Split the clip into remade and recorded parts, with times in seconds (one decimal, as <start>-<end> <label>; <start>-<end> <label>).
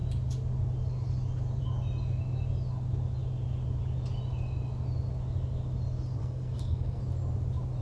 0.0-6.2 recorded; 6.2-7.0 remade; 7.0-7.8 recorded